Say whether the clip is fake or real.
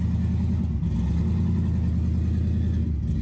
real